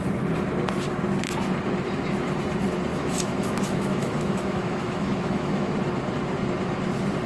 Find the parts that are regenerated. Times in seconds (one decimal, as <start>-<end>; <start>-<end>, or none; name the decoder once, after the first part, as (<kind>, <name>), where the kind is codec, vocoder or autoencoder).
2.9-5.7 (autoencoder, DAC-VAE)